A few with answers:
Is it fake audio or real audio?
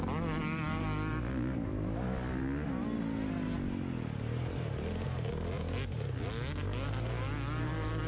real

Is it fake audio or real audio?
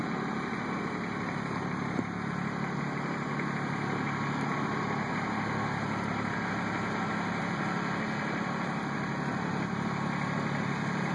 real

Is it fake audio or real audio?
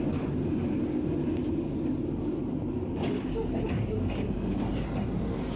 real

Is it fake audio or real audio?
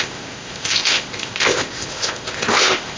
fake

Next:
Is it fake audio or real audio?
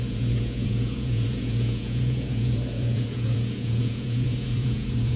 fake